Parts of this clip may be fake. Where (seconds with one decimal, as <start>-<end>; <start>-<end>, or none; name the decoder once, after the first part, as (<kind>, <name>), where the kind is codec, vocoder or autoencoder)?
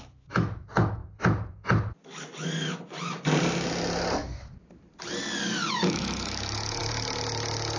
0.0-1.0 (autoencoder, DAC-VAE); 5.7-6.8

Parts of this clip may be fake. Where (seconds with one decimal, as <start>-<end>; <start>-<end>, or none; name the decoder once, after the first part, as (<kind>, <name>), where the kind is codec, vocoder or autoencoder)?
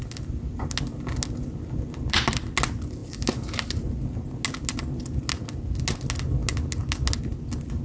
none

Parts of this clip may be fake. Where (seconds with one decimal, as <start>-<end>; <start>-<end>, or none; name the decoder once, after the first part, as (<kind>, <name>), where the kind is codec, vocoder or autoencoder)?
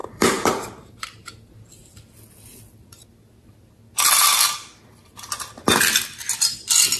0.0-1.0 (vocoder, BigVGAN v2)